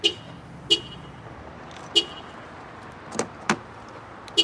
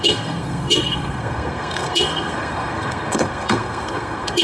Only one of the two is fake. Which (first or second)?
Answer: second